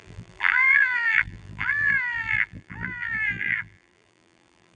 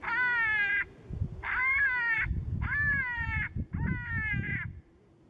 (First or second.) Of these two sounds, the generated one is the first